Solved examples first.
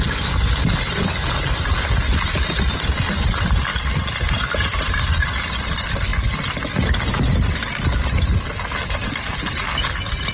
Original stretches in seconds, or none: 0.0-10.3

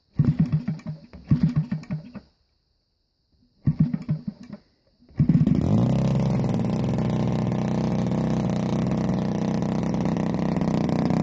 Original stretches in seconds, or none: 0.0-11.2